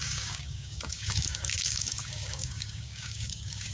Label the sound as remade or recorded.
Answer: remade